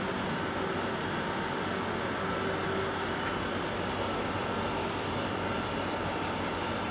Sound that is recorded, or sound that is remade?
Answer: recorded